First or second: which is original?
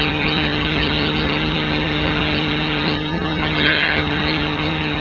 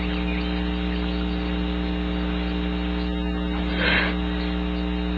second